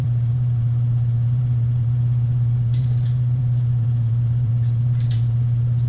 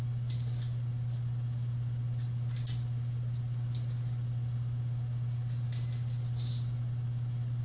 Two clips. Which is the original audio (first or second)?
second